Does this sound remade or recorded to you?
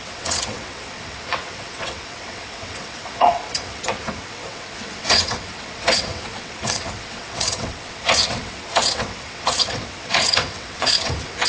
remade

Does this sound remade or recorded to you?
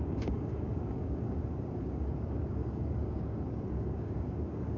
remade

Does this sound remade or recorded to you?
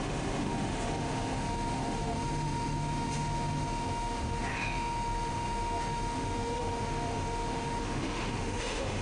remade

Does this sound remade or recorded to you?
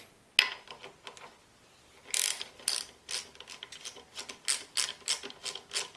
recorded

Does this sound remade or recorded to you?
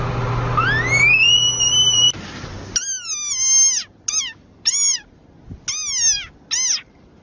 recorded